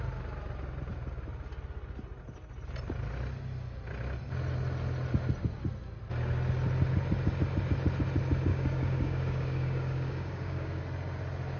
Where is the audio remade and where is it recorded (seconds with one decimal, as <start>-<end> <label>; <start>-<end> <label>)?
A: 0.0-8.5 recorded; 8.5-10.8 remade; 10.8-11.6 recorded